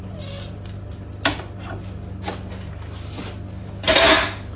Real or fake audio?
real